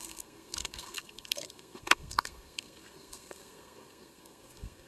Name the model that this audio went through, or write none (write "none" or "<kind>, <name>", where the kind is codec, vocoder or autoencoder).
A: codec, SNAC